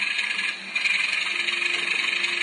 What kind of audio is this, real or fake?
real